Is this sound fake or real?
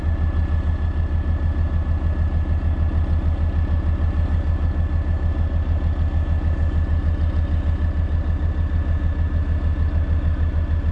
real